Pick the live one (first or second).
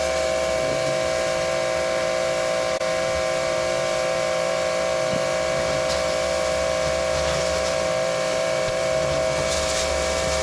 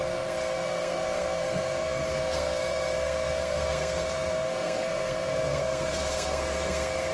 first